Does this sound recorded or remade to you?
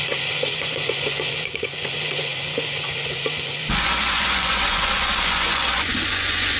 remade